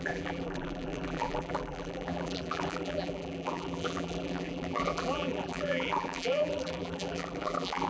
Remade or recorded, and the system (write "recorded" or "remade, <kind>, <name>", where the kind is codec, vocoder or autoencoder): remade, vocoder, BigVGAN v2